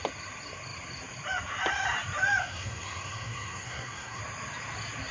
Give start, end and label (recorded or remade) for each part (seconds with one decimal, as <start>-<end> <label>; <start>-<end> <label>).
0.0-2.4 recorded; 2.4-4.2 remade; 4.2-5.1 recorded